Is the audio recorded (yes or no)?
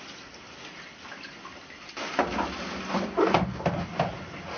yes